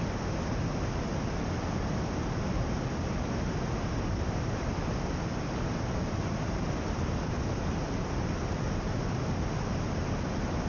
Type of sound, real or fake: real